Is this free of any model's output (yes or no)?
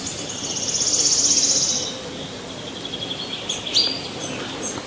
yes